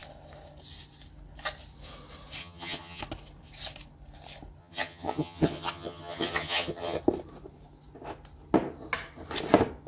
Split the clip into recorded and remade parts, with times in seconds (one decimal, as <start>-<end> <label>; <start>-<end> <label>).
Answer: 0.0-2.4 recorded; 2.4-3.0 remade; 3.0-4.6 recorded; 4.6-7.0 remade; 7.0-9.9 recorded